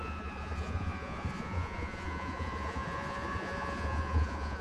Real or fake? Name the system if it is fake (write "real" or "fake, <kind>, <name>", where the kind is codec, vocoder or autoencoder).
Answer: fake, vocoder, Vocos